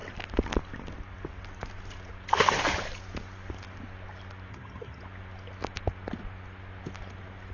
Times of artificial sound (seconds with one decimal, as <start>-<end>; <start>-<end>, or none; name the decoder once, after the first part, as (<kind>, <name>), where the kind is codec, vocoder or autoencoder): 4.5-5.0 (vocoder, HiFi-GAN)